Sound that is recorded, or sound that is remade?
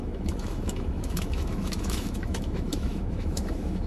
remade